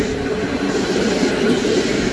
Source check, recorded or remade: recorded